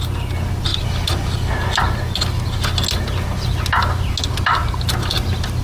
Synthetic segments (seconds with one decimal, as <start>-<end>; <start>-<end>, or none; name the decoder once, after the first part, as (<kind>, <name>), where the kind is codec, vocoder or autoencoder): none